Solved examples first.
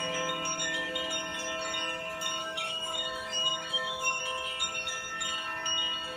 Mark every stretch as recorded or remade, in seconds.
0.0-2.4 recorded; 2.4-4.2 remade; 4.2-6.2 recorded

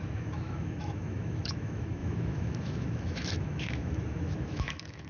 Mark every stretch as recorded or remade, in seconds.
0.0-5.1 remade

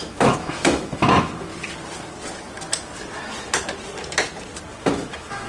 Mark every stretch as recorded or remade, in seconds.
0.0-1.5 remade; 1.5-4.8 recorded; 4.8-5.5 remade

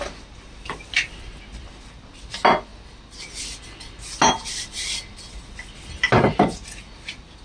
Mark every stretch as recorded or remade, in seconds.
0.0-7.4 recorded